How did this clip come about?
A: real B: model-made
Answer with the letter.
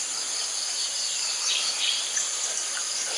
A